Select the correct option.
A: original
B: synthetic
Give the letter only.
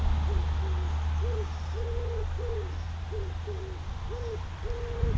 A